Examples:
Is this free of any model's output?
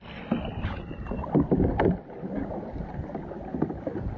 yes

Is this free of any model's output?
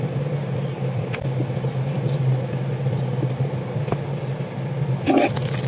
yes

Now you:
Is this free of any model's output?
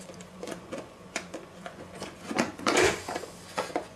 no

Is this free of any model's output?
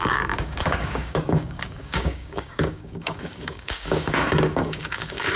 no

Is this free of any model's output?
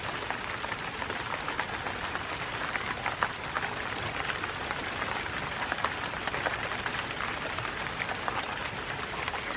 yes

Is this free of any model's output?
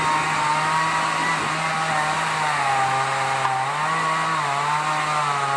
yes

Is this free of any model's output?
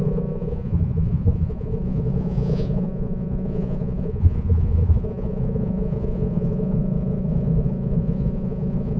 no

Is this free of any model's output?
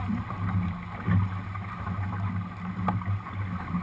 yes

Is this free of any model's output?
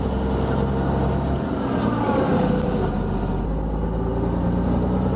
yes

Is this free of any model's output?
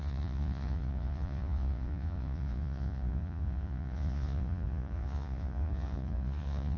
no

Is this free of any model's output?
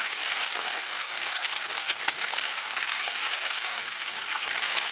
no